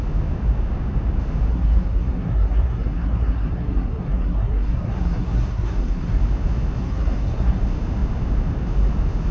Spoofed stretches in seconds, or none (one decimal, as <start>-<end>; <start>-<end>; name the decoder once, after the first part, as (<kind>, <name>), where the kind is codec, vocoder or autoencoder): 1.5-6.2 (codec, SNAC); 6.8-7.6